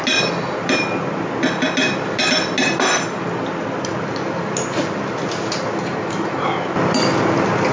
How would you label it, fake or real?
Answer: real